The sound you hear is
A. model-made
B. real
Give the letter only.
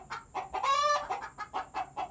B